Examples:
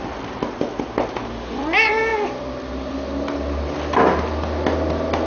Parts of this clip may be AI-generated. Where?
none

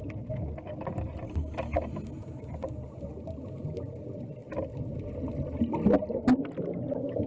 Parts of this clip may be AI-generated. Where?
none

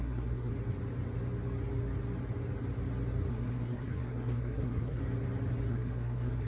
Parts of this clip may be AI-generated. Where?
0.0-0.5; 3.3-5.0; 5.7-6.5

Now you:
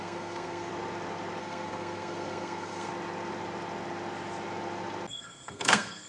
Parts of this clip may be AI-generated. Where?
0.0-0.7; 1.4-2.9; 5.1-6.1

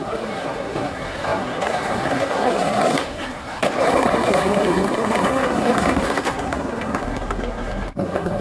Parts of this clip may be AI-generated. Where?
0.0-8.4

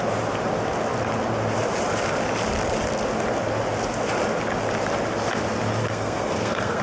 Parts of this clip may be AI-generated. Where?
5.8-6.8